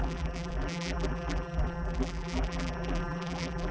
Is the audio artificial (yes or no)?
yes